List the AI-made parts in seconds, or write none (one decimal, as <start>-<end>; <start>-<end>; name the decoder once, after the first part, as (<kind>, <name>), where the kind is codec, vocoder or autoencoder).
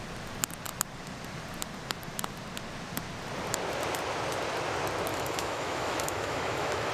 5.1-6.9 (autoencoder, DAC-VAE)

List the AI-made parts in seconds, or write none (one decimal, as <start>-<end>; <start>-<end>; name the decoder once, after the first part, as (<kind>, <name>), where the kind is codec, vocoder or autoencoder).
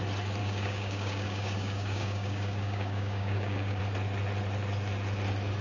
0.4-3.8 (codec, DAC)